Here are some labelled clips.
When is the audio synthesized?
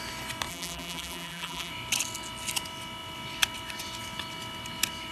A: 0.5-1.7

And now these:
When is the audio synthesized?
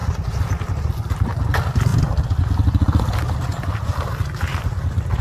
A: none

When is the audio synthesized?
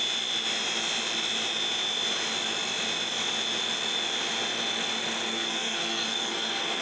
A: 5.3-6.8